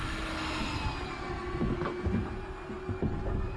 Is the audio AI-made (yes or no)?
no